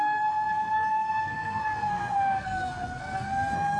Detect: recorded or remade remade